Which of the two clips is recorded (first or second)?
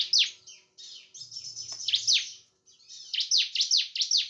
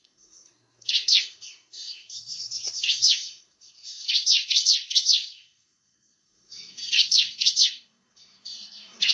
first